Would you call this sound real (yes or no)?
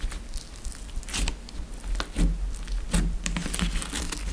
yes